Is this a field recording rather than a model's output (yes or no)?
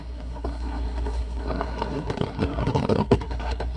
no